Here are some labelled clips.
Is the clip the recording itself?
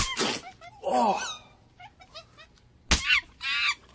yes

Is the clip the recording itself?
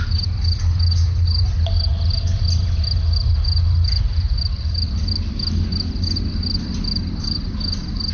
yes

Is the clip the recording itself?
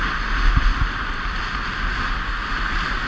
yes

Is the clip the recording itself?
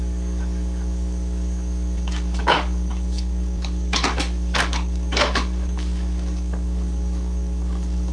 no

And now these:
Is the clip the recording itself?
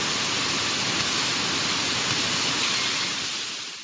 yes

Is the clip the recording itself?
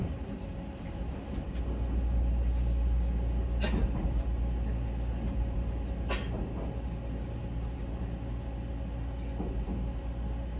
yes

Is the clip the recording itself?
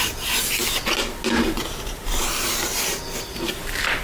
yes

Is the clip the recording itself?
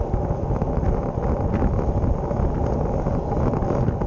yes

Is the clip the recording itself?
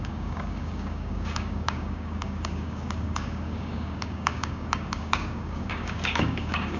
no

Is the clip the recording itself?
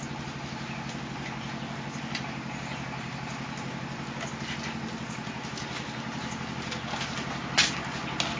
yes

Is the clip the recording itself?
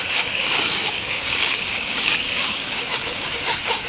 no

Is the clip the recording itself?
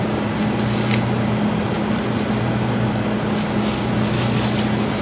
yes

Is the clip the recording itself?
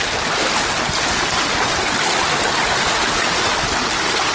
yes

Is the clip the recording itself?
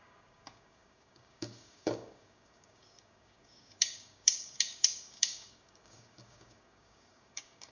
no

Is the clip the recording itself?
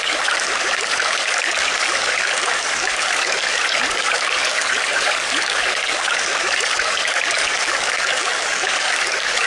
no